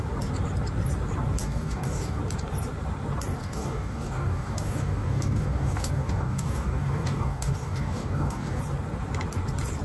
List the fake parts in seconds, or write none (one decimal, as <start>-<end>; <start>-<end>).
1.4-2.2; 3.4-8.6

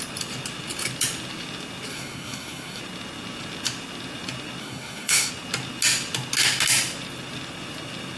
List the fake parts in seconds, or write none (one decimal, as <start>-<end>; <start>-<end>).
1.9-2.8; 4.6-5.3